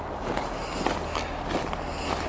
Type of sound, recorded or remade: recorded